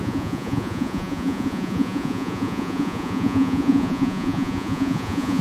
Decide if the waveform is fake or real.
fake